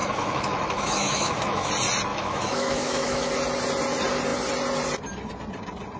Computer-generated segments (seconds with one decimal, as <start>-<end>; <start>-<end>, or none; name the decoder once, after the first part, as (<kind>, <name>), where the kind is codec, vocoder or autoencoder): 0.0-1.7 (autoencoder, DAC-VAE); 2.1-3.3